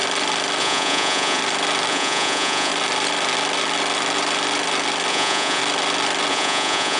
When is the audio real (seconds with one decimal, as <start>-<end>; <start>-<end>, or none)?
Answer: 0.0-0.6; 1.4-1.9; 2.7-5.1; 5.6-6.3